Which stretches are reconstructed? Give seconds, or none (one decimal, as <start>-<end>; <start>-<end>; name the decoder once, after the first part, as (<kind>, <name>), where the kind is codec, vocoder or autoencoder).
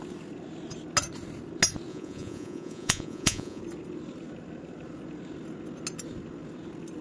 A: 1.9-3.6 (vocoder, Vocos)